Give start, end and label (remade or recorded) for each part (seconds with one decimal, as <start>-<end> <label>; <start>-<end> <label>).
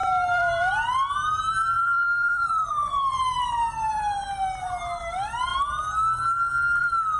0.0-5.5 remade; 5.5-6.8 recorded; 6.8-7.2 remade